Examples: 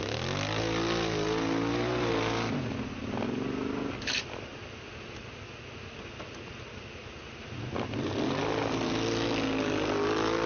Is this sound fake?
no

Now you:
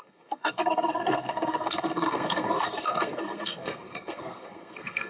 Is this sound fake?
yes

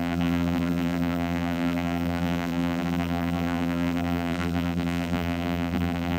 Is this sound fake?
yes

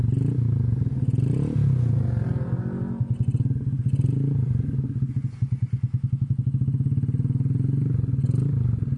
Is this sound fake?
no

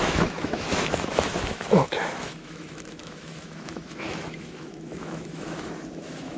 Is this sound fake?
yes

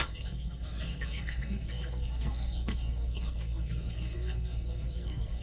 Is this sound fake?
yes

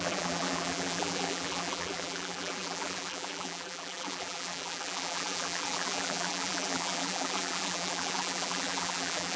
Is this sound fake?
yes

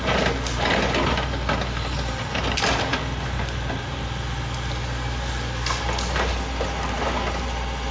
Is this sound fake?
no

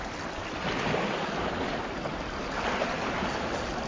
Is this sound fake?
no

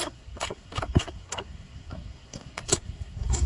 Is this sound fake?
yes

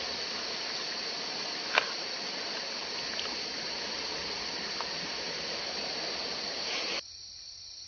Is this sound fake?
no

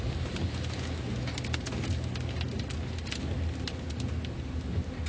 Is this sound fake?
no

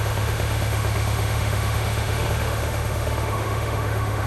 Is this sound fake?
yes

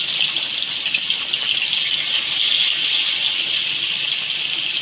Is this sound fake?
no